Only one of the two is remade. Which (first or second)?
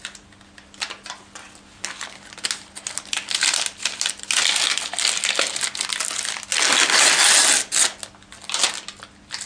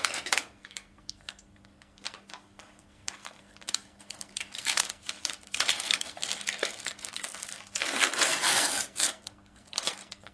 second